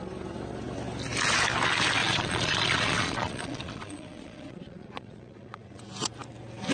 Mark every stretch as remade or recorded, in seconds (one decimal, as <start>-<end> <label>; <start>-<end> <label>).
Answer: 0.0-2.0 recorded; 2.0-5.8 remade; 5.8-6.7 recorded